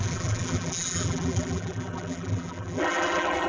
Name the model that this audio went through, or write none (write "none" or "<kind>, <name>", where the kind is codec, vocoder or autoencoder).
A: vocoder, BigVGAN v2